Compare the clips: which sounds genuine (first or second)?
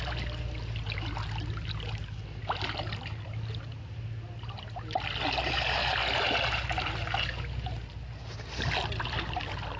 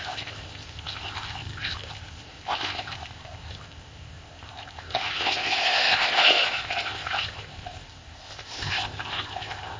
first